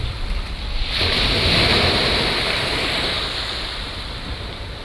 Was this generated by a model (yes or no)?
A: no